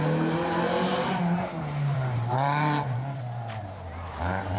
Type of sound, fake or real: fake